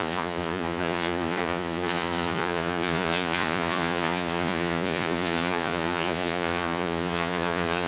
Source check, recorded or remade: remade